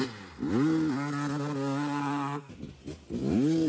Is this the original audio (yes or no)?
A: yes